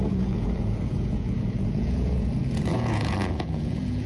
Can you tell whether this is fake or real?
fake